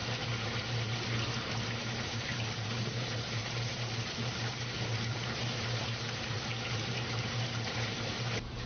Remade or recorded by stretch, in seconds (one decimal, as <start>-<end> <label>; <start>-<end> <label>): 0.0-1.7 recorded; 1.7-8.7 remade